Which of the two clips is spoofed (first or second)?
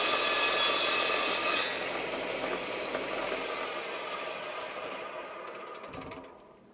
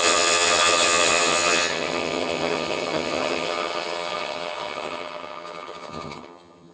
second